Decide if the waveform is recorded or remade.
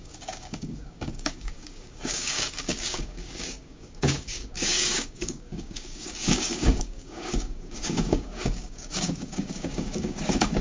remade